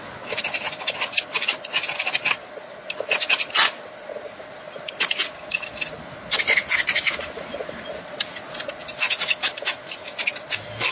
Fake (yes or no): no